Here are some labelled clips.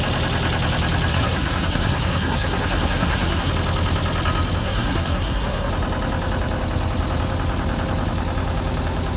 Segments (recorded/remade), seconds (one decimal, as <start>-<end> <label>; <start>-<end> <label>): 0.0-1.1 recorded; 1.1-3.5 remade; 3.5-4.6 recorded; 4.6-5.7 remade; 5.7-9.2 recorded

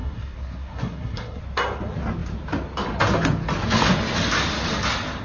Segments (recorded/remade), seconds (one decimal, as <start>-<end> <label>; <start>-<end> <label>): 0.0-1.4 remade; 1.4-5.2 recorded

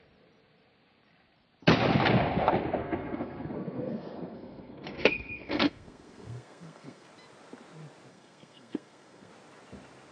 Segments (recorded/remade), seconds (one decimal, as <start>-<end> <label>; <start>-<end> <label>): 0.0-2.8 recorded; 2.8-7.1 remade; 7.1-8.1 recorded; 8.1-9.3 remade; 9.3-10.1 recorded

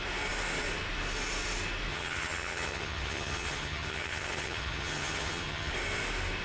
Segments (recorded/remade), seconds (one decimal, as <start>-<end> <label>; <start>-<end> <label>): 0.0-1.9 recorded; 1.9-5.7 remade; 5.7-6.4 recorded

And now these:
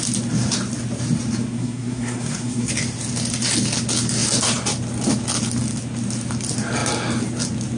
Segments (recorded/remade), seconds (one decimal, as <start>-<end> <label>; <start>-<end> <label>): 0.0-1.4 recorded; 1.4-2.7 remade; 2.7-7.8 recorded